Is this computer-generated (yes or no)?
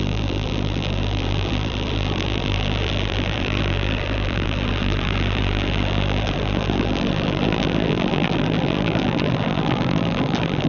yes